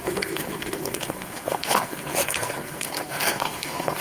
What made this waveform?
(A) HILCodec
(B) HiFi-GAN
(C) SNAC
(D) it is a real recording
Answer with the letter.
C